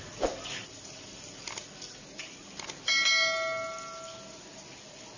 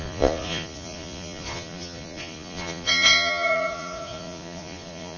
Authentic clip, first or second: first